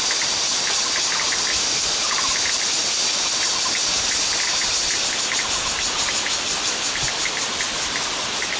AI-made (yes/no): no